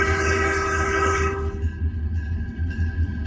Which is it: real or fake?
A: fake